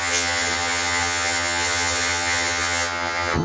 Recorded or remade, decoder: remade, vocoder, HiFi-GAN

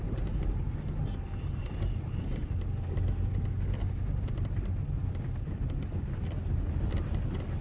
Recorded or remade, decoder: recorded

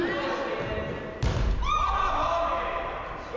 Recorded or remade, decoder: recorded